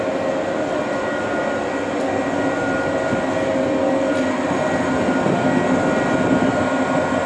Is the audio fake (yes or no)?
no